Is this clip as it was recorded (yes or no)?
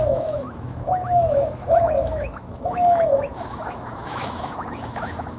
no